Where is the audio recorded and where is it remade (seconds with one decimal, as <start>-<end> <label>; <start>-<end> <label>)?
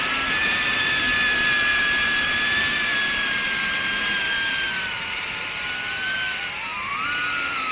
0.0-0.4 recorded; 0.4-1.0 remade; 1.0-1.7 recorded; 1.7-5.4 remade; 5.4-7.7 recorded